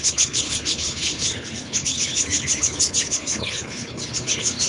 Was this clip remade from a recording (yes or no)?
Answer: yes